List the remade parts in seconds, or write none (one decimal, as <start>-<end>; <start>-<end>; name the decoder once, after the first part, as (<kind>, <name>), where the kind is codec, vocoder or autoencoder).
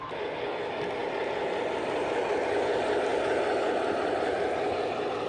none